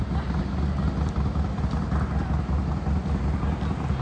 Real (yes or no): yes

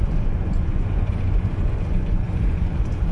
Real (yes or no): no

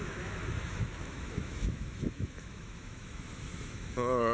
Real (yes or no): no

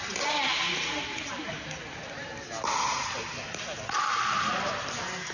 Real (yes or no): yes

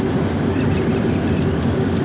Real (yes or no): yes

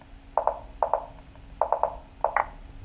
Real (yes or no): yes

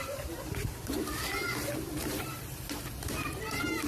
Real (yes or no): no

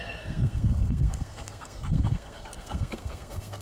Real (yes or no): no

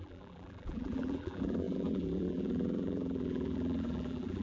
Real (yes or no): no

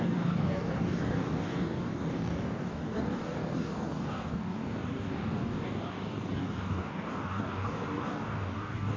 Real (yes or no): no